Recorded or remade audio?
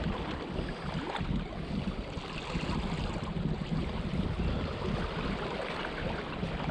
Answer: recorded